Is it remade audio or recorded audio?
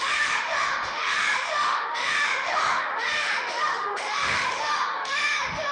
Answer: remade